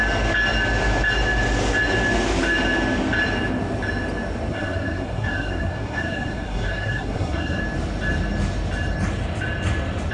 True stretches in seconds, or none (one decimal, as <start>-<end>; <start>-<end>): 0.0-4.5; 7.6-10.1